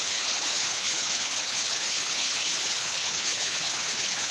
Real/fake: fake